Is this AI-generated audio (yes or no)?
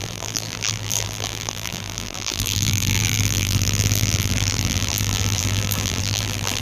yes